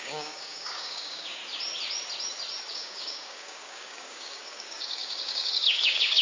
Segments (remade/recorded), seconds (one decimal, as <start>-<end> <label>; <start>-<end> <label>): 0.0-1.4 remade; 1.4-2.7 recorded; 2.7-6.2 remade